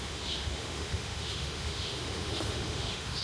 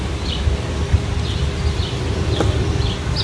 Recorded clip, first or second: second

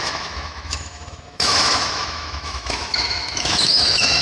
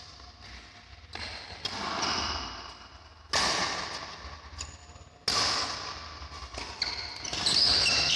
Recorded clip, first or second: second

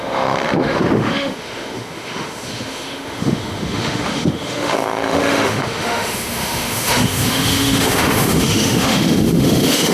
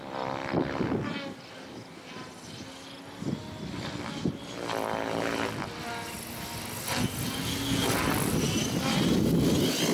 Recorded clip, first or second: second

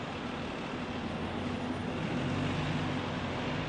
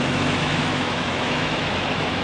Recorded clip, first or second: first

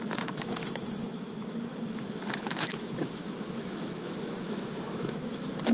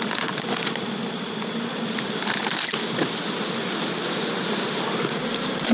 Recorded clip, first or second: second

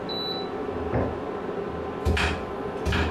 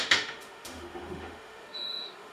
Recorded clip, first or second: first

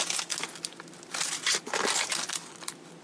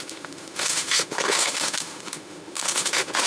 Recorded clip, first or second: first